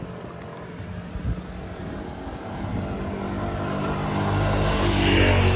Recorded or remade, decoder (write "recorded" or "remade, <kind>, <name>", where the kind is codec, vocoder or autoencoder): recorded